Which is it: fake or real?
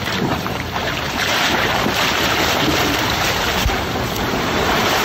fake